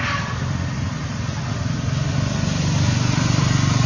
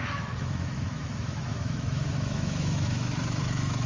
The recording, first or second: first